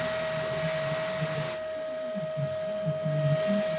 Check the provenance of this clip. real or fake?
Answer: real